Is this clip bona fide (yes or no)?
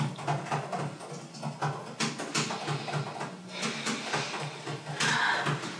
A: yes